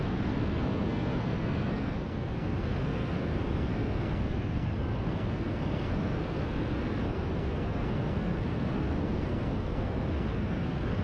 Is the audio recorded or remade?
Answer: remade